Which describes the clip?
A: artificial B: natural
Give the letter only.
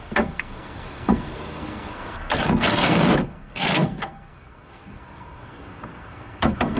A